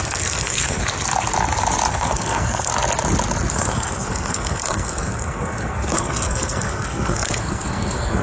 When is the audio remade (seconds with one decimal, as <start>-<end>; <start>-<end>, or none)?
0.0-0.8; 1.9-2.7; 3.5-8.2